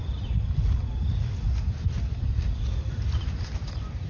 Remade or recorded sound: recorded